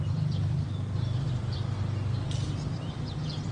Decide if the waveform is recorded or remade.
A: remade